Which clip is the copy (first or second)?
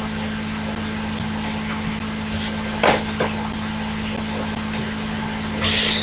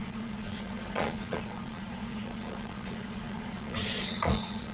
second